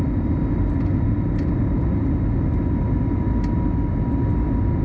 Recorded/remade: recorded